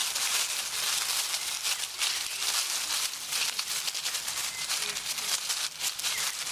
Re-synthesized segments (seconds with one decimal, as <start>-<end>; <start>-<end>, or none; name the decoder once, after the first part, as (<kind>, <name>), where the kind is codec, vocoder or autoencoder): 0.0-4.4 (vocoder, BigVGAN v2); 5.5-6.5